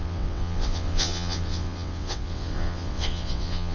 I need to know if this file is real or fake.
fake